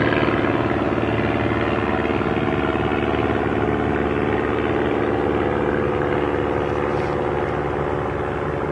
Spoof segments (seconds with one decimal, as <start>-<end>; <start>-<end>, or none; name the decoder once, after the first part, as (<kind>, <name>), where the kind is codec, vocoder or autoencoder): none